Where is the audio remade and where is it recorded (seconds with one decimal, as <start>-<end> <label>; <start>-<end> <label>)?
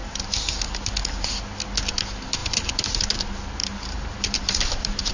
0.0-0.9 remade; 0.9-2.4 recorded; 2.4-3.0 remade; 3.0-3.6 recorded; 3.6-5.1 remade